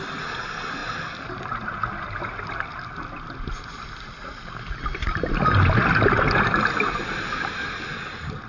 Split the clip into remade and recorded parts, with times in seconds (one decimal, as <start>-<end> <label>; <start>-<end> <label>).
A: 0.0-8.5 recorded